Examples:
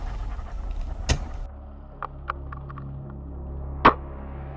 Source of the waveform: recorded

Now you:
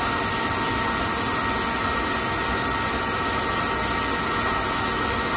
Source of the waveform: recorded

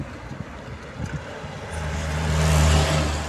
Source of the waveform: recorded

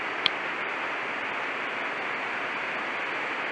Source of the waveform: recorded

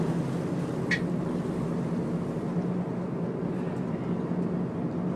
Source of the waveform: recorded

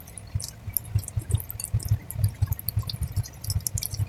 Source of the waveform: recorded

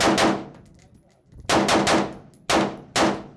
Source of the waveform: recorded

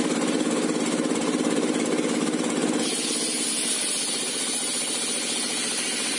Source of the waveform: recorded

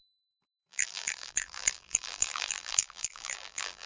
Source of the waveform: remade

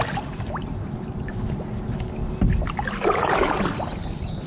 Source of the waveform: recorded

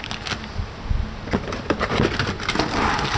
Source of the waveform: recorded